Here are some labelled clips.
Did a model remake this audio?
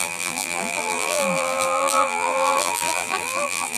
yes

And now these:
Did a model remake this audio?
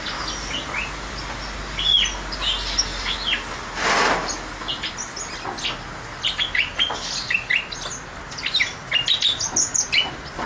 no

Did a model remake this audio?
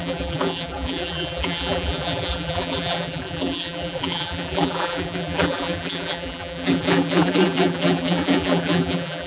yes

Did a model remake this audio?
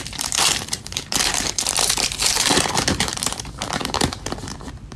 yes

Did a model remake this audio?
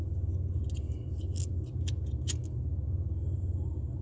no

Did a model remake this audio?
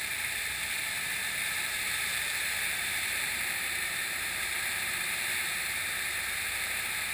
yes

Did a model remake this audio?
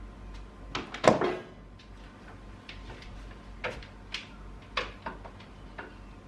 no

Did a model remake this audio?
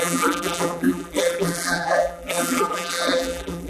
yes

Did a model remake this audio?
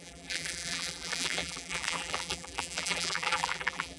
yes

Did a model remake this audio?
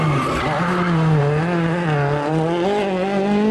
no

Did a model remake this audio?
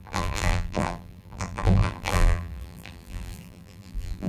yes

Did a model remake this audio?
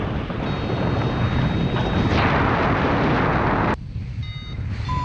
no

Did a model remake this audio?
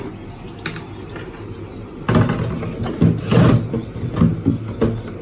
no